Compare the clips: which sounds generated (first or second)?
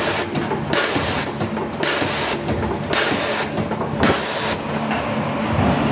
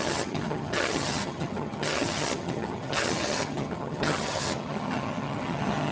second